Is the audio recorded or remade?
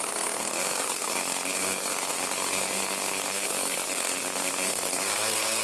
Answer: remade